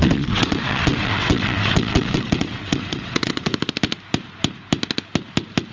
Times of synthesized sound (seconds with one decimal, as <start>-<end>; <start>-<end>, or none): 0.0-3.5

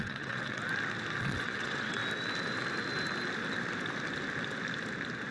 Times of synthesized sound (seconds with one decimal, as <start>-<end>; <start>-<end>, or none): 0.0-0.6; 1.2-2.0

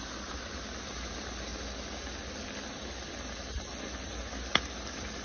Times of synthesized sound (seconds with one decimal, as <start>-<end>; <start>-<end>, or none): none